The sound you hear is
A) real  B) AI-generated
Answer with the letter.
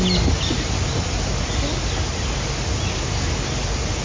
A